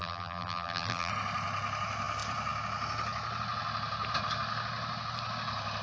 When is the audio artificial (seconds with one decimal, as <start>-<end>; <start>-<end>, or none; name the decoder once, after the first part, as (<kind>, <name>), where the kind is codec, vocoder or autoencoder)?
0.0-1.1 (vocoder, BigVGAN v2)